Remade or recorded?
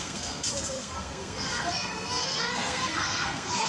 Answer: remade